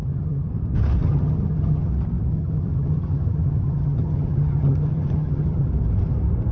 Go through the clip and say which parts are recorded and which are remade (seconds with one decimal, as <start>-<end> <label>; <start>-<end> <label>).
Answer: 0.0-0.5 remade; 0.5-1.0 recorded; 1.0-1.9 remade; 1.9-2.3 recorded; 2.3-5.7 remade; 5.7-6.5 recorded